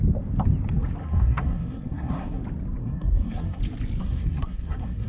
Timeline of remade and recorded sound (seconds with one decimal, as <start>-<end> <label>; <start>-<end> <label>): 0.0-1.0 recorded; 1.0-2.4 remade; 2.4-2.8 recorded; 2.8-3.6 remade; 3.6-4.0 recorded; 4.0-5.1 remade